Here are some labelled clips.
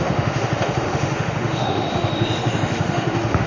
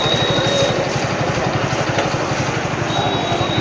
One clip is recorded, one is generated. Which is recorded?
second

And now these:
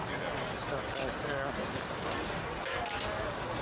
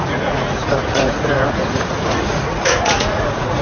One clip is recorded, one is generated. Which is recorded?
first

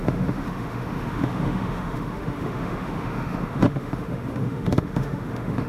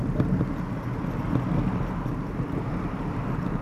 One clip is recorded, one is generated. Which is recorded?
second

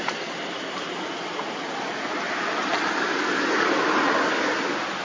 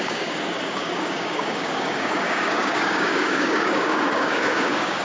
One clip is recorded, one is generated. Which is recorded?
first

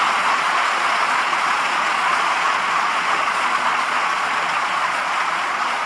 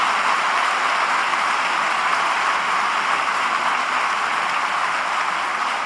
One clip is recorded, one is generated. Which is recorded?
second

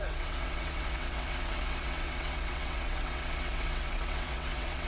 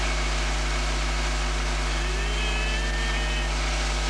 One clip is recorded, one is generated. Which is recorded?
second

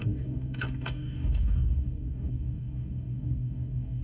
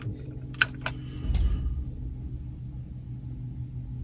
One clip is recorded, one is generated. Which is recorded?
second